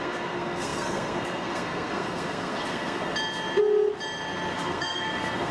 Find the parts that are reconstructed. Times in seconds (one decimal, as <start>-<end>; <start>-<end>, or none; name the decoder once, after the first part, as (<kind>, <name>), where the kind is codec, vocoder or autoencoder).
0.0-3.1 (codec, SNAC); 4.6-5.5